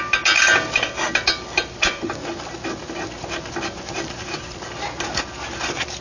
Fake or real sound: real